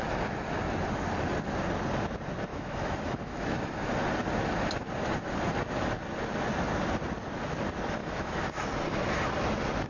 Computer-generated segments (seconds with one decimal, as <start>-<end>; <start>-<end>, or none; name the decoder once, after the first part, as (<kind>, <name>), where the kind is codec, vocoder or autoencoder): 2.5-3.9 (autoencoder, DAC-VAE); 8.0-8.6